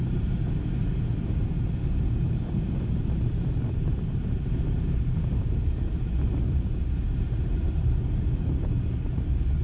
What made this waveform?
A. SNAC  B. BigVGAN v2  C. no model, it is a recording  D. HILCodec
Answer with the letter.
B